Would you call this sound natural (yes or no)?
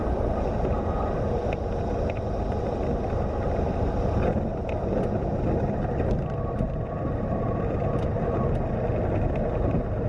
yes